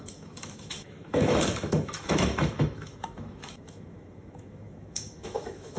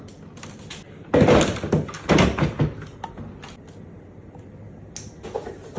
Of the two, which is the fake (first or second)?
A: first